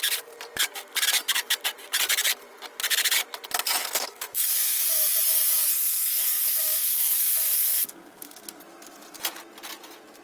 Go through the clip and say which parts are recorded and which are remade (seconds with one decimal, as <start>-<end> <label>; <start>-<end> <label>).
0.0-3.8 recorded; 3.8-4.8 remade; 4.8-5.9 recorded; 5.9-8.6 remade; 8.6-10.2 recorded